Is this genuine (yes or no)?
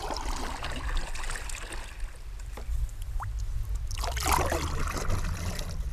yes